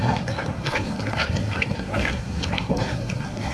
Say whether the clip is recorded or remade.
remade